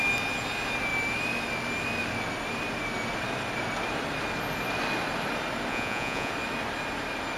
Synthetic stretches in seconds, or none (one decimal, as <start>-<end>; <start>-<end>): 5.7-6.3